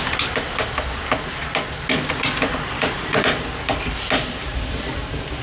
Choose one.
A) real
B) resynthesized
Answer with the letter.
A